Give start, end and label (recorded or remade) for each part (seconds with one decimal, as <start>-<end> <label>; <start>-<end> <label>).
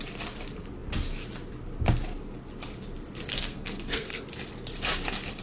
0.0-3.3 recorded; 3.3-4.2 remade; 4.2-5.4 recorded